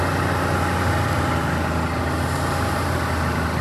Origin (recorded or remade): recorded